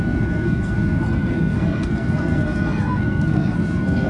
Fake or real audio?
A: fake